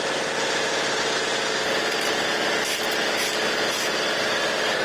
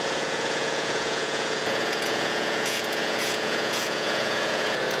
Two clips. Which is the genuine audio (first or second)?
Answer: first